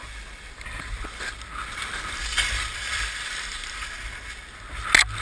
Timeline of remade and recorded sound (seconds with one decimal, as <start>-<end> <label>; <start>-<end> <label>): 0.0-5.2 recorded